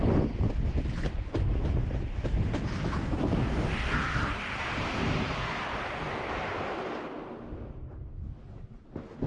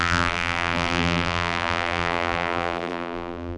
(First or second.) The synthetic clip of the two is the second